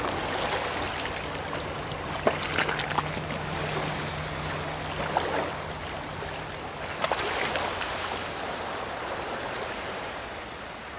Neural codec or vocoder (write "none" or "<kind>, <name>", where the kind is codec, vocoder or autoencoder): none